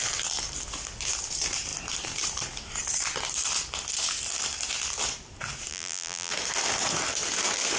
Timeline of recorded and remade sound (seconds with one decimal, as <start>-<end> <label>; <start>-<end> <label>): 0.0-5.7 recorded; 5.7-6.3 remade; 6.3-7.8 recorded